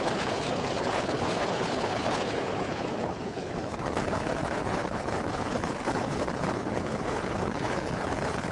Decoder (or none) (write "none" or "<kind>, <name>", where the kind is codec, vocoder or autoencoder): codec, HILCodec